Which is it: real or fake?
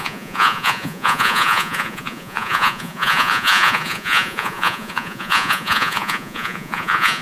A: fake